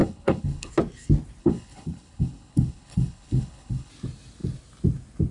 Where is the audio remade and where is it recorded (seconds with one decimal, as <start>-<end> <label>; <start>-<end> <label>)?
0.0-0.7 remade; 0.7-1.4 recorded; 1.4-3.9 remade; 3.9-5.3 recorded